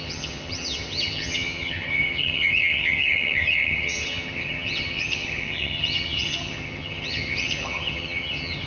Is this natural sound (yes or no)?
no